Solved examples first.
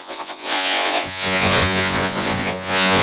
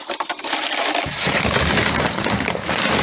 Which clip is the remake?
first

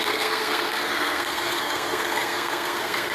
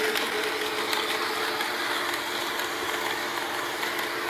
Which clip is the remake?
first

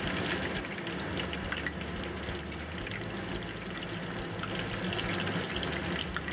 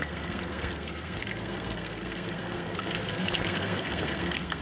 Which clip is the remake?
second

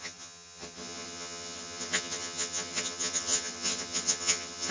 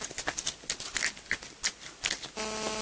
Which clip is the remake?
first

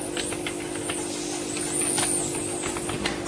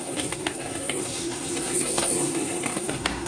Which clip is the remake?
second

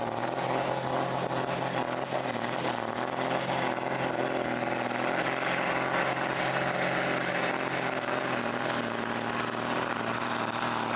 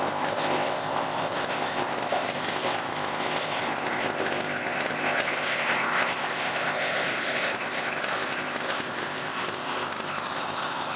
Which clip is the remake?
second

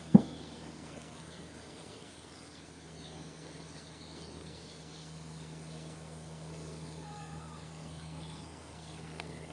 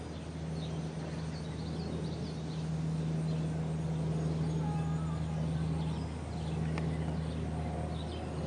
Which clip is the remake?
first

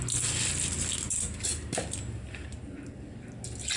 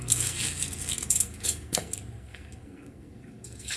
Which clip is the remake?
second